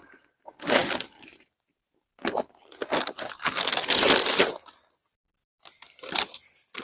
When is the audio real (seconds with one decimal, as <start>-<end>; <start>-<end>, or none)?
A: 0.0-6.8